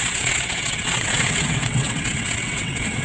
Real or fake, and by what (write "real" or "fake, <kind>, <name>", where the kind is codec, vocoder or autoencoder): fake, vocoder, WaveNeXt